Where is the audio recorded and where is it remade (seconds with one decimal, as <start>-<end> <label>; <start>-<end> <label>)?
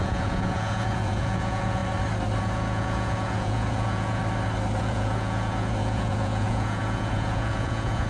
0.0-1.8 remade; 1.8-2.4 recorded; 2.4-4.2 remade; 4.2-4.8 recorded; 4.8-8.1 remade